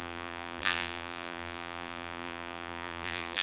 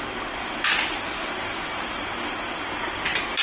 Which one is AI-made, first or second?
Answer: first